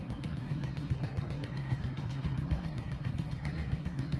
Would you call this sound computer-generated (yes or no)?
yes